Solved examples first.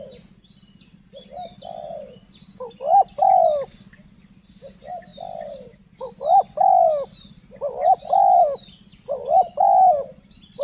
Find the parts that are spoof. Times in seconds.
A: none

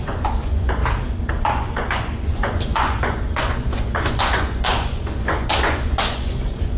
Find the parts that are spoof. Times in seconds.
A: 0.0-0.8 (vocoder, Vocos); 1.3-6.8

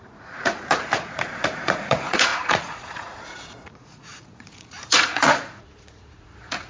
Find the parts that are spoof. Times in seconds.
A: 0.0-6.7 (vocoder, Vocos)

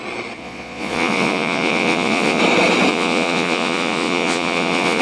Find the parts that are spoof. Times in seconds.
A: 0.4-2.4 (vocoder, Vocos); 2.9-5.0